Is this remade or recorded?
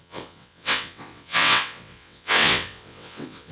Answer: remade